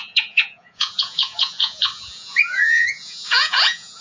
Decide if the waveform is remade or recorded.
remade